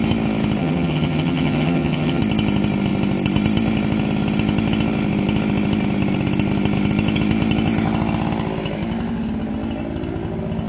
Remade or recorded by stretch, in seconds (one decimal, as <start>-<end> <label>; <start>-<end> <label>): 0.0-0.6 recorded; 0.6-2.2 remade; 2.2-10.7 recorded